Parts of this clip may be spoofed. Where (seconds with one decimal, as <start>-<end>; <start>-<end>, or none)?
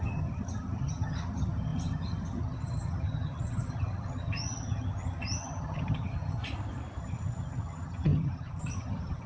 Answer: 0.0-6.4; 7.0-9.3